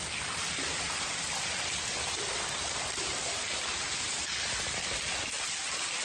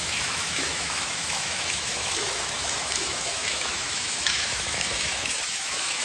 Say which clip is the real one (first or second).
first